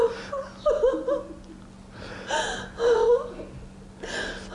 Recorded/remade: recorded